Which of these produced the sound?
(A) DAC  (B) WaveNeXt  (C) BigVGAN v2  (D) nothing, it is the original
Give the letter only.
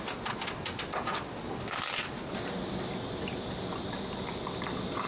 D